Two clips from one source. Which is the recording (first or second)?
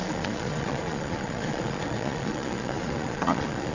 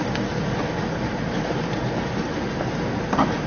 second